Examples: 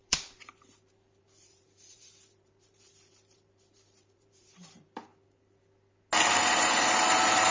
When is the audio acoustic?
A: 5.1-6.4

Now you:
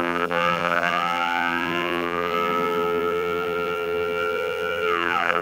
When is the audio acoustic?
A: none

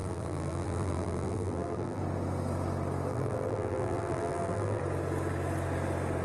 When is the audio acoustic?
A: 2.0-3.1; 4.8-6.2